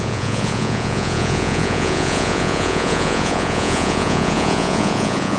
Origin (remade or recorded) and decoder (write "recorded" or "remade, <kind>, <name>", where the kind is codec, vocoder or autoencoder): remade, vocoder, Vocos